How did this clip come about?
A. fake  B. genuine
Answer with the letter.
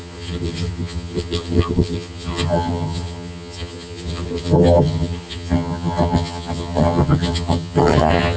A